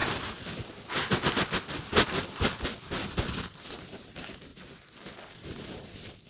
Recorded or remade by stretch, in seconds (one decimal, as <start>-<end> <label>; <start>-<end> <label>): 0.0-3.6 recorded; 3.6-4.5 remade; 4.5-5.3 recorded; 5.3-6.3 remade